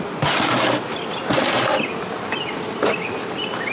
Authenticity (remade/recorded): recorded